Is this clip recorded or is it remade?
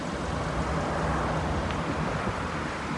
remade